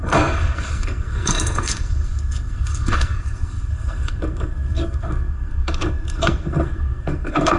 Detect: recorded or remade remade